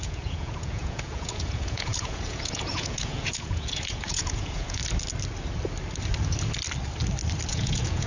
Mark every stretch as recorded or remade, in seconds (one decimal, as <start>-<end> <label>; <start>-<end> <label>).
0.0-4.8 remade; 4.8-7.5 recorded; 7.5-8.1 remade